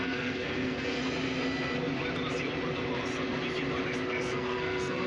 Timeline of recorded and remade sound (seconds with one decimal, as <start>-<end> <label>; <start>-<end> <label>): 0.0-1.0 remade; 1.0-4.1 recorded; 4.1-5.1 remade